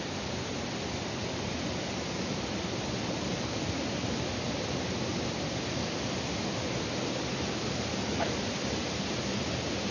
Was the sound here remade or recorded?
recorded